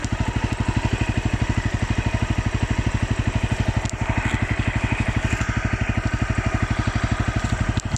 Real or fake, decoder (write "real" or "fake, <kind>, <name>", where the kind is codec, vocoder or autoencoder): real